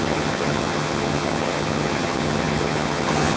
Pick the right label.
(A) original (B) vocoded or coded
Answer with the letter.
B